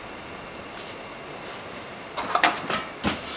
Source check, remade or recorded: recorded